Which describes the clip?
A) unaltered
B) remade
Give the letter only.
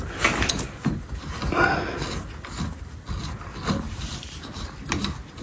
A